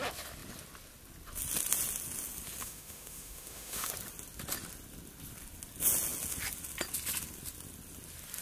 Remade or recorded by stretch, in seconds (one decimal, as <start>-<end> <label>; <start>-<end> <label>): 0.0-2.6 recorded; 2.6-3.9 remade; 3.9-8.4 recorded